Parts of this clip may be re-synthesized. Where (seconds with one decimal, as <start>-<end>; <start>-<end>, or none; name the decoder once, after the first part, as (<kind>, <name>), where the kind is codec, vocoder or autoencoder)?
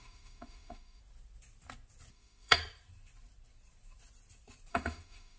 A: 0.0-1.0 (autoencoder, DAC-VAE); 2.1-2.6; 4.7-5.4